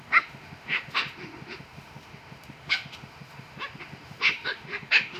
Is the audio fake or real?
fake